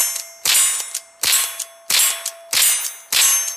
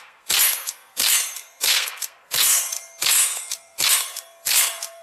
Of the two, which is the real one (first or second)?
first